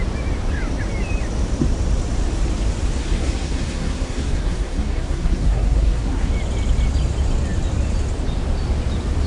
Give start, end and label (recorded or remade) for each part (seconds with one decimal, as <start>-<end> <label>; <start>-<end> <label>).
0.0-3.0 recorded; 3.0-6.3 remade; 6.3-9.3 recorded